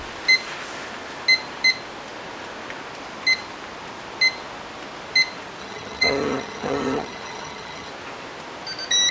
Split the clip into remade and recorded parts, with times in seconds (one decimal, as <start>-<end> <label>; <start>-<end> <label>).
0.0-5.6 recorded; 5.6-7.9 remade; 7.9-9.1 recorded